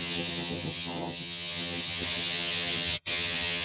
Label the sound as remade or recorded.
remade